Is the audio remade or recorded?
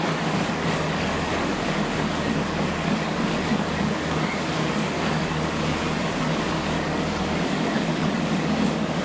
remade